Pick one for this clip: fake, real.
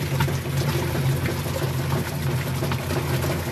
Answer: real